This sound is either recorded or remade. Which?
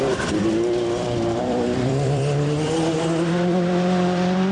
remade